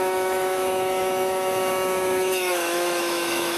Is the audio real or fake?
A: fake